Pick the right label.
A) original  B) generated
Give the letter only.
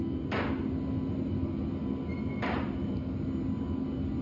A